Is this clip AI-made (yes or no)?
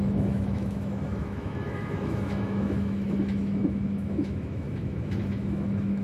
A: yes